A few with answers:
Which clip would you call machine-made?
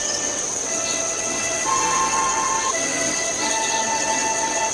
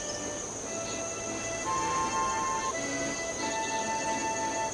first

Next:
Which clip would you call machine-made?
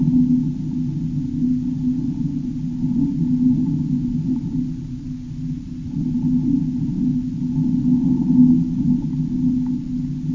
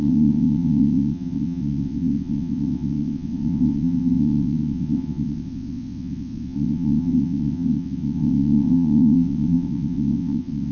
second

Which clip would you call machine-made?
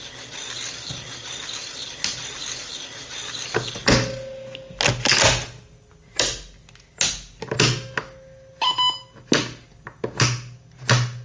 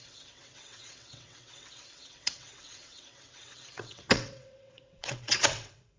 second